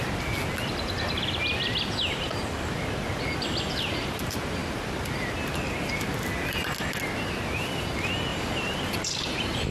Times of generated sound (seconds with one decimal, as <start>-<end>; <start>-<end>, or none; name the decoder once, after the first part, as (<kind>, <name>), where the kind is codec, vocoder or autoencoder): 8.3-9.7 (vocoder, BigVGAN v2)